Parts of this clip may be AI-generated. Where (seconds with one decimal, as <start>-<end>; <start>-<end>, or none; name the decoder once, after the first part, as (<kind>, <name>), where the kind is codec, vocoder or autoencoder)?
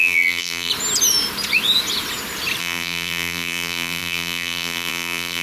0.0-0.7 (vocoder, BigVGAN v2); 2.6-5.4